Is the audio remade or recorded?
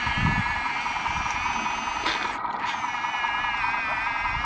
recorded